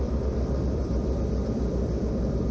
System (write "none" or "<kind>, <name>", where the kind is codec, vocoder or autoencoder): vocoder, BigVGAN v2